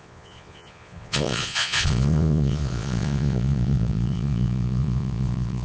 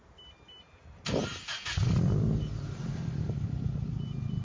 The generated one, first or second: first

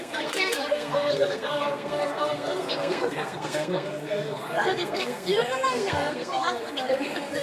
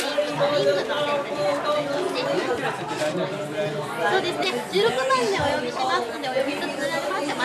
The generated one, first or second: first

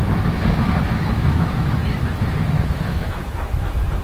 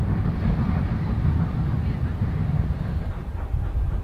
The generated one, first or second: first